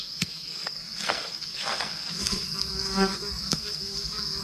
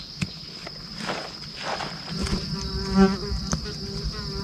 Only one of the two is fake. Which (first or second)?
first